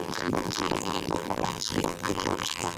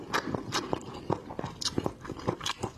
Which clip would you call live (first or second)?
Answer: second